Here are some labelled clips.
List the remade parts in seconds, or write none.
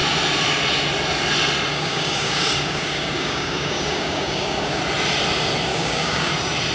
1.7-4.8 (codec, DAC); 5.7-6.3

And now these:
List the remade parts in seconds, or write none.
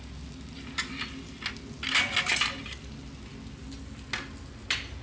none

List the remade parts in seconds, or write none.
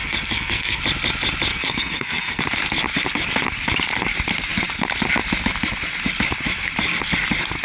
0.0-0.8 (codec, SNAC); 1.5-2.4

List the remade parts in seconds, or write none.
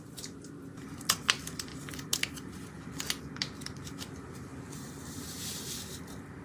0.0-1.7 (vocoder, BigVGAN v2); 3.2-4.5; 5.2-6.4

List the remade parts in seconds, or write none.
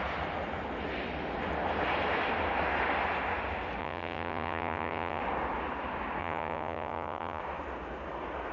3.8-5.2 (vocoder, HiFi-GAN); 6.2-7.4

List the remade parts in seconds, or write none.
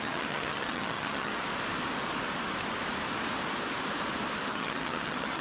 0.0-1.3 (vocoder, HiFi-GAN); 4.5-5.4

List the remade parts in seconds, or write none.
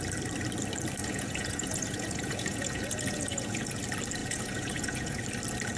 1.0-3.8 (vocoder, Vocos); 4.2-5.2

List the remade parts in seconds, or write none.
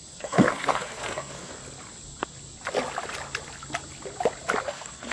0.0-1.5 (codec, SNAC); 4.6-5.1